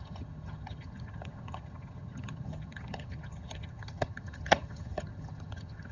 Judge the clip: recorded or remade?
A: remade